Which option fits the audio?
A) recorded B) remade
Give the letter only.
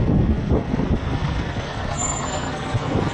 B